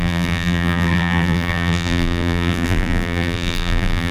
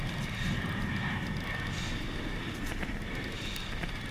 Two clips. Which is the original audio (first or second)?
second